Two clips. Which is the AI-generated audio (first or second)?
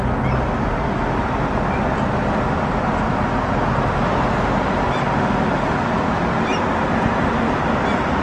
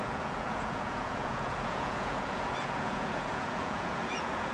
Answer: second